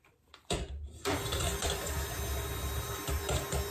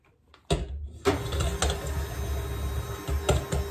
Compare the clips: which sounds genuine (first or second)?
second